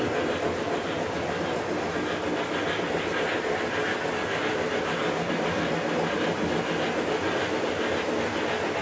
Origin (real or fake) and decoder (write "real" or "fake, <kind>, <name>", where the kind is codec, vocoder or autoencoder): real